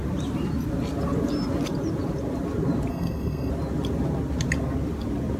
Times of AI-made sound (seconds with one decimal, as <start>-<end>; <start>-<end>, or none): 2.9-3.5